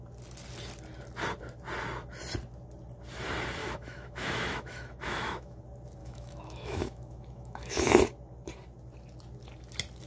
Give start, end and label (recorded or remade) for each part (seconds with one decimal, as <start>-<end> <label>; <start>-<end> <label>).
0.0-3.6 recorded; 3.6-5.6 remade; 5.6-6.0 recorded; 6.0-8.0 remade; 8.0-10.1 recorded